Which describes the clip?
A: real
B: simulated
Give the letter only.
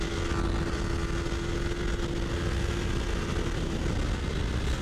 A